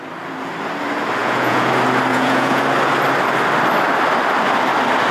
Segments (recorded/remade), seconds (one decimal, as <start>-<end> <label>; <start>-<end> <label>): 0.0-1.2 recorded; 1.2-1.7 remade; 1.7-2.1 recorded; 2.1-2.6 remade; 2.6-5.1 recorded